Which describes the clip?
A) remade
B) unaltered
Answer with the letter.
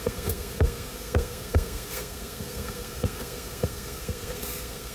A